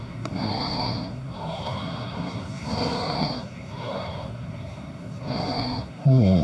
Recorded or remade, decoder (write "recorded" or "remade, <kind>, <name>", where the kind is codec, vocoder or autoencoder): remade, codec, SNAC